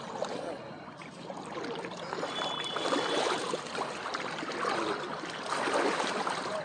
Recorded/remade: recorded